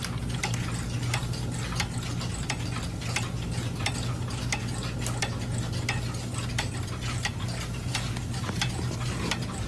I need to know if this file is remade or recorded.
recorded